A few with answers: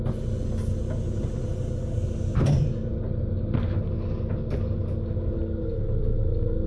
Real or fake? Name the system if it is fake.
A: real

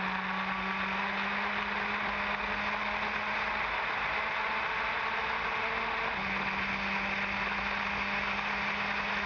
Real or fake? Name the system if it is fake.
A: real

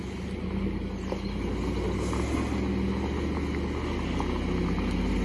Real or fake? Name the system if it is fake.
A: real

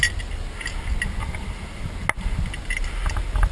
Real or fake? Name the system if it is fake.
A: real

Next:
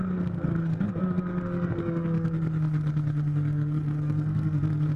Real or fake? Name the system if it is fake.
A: fake, codec, SNAC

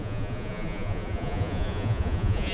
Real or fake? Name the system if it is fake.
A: fake, vocoder, Vocos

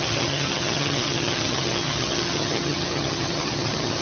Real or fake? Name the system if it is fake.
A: fake, vocoder, HiFi-GAN